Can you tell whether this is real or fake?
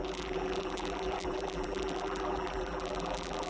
fake